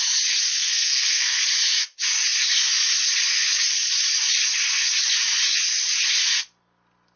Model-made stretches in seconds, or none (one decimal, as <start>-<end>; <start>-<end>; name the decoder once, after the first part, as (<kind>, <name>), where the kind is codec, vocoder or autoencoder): 0.5-1.4 (codec, SNAC)